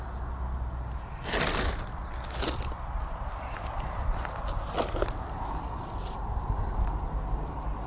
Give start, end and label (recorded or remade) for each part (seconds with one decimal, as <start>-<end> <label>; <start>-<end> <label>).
0.0-7.9 recorded